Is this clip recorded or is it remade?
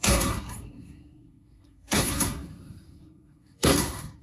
remade